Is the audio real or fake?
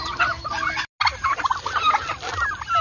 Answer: real